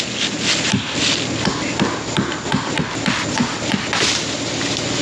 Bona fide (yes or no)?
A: yes